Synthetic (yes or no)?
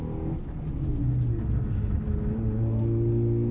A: no